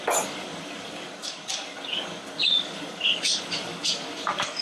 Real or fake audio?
fake